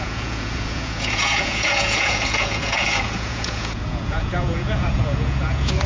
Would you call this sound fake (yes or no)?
yes